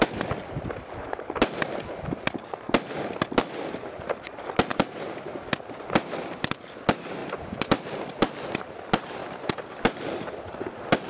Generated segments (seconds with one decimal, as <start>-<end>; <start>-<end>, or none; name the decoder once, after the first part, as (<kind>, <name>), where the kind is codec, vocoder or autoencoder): 7.2-8.2 (vocoder, BigVGAN v2); 9.2-9.8